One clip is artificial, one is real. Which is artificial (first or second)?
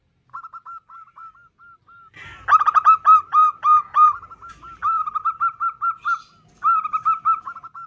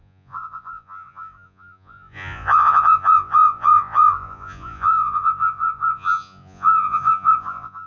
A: second